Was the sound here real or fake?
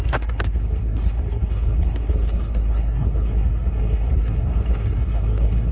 fake